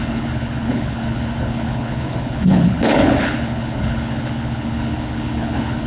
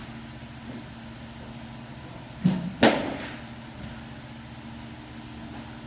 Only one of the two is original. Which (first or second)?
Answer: second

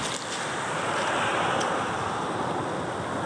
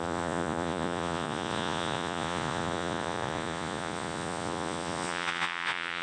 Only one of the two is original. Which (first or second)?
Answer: first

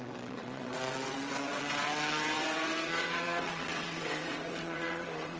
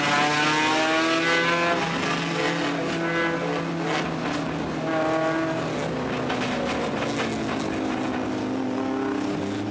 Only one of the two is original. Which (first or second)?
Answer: second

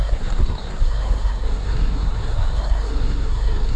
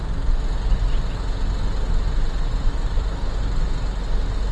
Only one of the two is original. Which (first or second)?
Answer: second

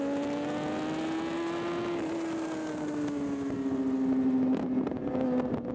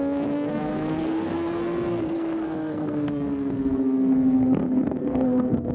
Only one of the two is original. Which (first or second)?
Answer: first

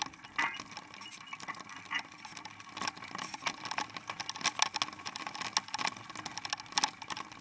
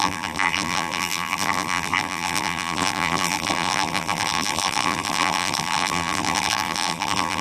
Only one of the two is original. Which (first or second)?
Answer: first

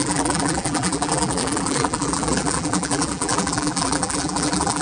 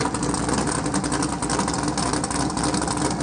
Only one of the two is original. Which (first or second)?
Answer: second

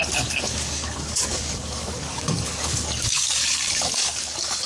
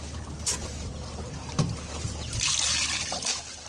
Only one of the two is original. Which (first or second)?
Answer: second